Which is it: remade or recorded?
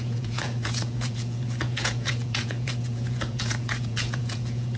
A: remade